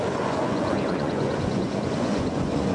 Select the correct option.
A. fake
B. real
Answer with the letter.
A